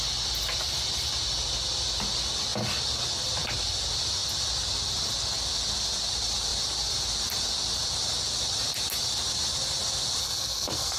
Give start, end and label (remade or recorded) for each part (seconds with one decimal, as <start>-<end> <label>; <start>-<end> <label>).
0.0-10.2 recorded; 10.2-11.0 remade